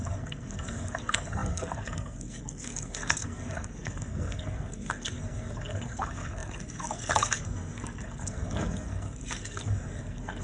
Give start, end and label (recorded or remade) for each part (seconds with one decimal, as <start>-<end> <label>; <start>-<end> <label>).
0.0-10.4 remade